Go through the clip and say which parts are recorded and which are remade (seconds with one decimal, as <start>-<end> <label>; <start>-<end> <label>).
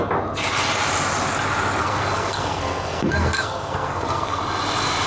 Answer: 0.0-1.8 recorded; 1.8-4.4 remade; 4.4-5.1 recorded